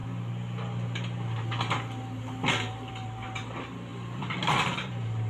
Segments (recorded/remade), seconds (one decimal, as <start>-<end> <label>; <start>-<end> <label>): 0.0-3.9 recorded; 3.9-5.3 remade